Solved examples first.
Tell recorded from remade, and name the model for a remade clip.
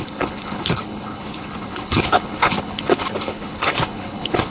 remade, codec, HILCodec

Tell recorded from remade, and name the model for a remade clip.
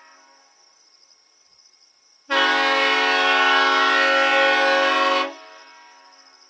recorded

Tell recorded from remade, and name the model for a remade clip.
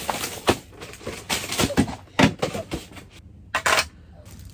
recorded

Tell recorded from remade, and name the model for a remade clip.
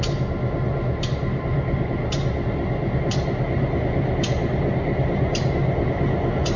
recorded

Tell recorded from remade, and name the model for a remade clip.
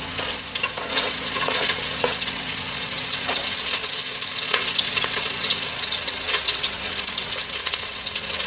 remade, vocoder, WaveNeXt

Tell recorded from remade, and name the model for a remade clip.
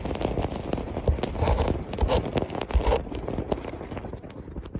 remade, vocoder, BigVGAN v2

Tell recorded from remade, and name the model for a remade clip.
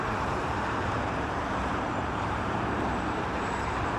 remade, vocoder, BigVGAN v2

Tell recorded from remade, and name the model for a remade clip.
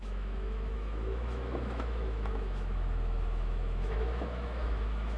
remade, autoencoder, DAC-VAE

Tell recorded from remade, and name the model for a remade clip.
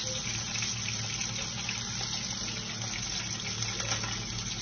recorded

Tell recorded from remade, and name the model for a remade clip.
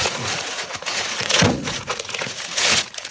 remade, vocoder, Vocos